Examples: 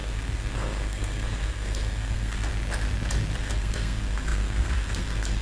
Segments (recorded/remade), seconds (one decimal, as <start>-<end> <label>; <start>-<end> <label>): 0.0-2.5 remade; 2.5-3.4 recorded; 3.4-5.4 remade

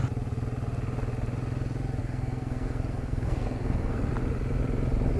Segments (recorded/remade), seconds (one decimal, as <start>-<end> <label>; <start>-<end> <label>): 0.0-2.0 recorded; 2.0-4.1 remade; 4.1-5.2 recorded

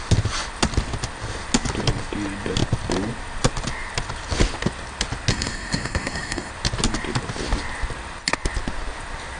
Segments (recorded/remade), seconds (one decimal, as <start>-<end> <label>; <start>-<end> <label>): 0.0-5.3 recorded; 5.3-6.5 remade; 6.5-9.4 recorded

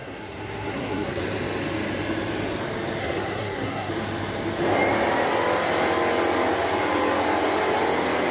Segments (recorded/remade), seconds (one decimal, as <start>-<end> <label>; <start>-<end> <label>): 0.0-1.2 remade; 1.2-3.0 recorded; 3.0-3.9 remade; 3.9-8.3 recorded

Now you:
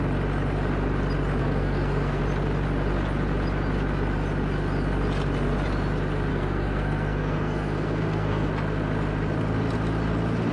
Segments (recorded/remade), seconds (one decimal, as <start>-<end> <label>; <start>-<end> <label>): 0.0-1.4 recorded; 1.4-2.2 remade; 2.2-6.3 recorded; 6.3-8.5 remade; 8.5-10.5 recorded

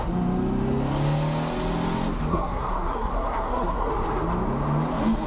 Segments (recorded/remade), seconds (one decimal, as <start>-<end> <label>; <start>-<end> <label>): 0.0-2.3 recorded; 2.3-3.9 remade; 3.9-5.3 recorded

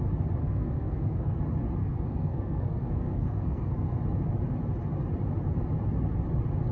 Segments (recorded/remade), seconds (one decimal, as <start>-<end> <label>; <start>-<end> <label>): 0.0-0.4 recorded; 0.4-1.4 remade; 1.4-1.8 recorded; 1.8-4.0 remade; 4.0-6.7 recorded